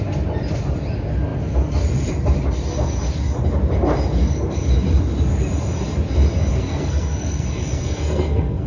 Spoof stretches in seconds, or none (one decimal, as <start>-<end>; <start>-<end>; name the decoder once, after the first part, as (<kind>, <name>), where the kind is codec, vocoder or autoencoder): 6.5-8.7 (codec, SNAC)